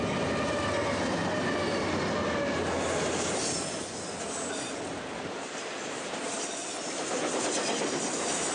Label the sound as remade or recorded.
recorded